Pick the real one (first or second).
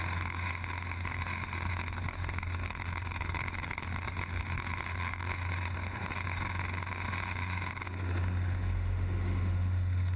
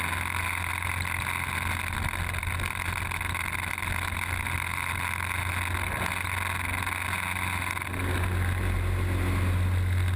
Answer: second